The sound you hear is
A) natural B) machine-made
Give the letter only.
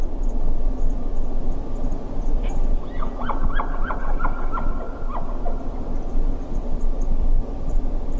A